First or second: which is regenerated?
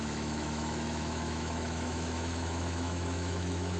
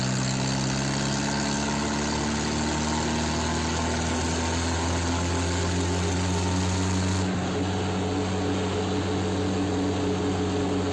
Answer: first